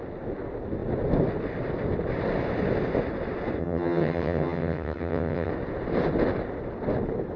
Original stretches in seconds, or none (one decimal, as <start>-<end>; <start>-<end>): 0.0-3.6; 5.5-7.4